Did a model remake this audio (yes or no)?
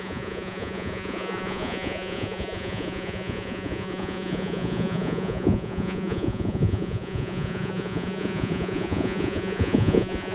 yes